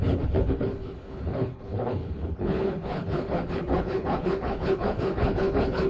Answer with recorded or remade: remade